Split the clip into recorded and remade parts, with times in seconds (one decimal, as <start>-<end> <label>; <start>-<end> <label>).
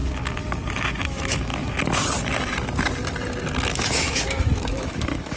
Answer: 0.0-1.0 recorded; 1.0-1.5 remade; 1.5-3.7 recorded; 3.7-5.4 remade